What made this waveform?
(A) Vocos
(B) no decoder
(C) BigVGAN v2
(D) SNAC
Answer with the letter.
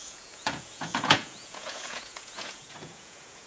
A